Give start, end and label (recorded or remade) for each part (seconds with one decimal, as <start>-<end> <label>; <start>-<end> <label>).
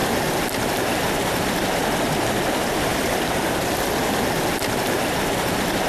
0.0-0.8 remade; 0.8-2.9 recorded; 2.9-5.2 remade; 5.2-5.9 recorded